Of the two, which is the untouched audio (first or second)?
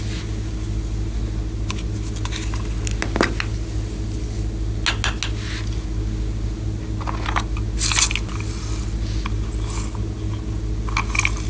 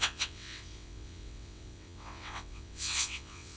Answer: first